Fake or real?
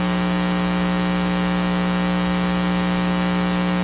real